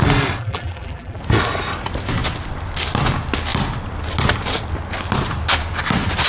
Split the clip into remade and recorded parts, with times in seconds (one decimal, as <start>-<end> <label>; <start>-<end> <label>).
0.0-0.4 recorded; 0.4-1.2 remade; 1.2-6.3 recorded